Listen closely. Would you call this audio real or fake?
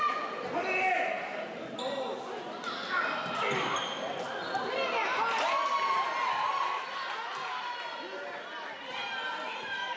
real